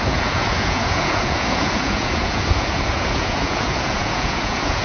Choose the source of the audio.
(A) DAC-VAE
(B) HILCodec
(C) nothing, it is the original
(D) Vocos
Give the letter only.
D